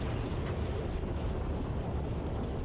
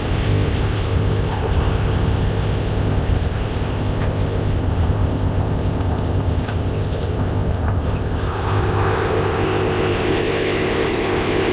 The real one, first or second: first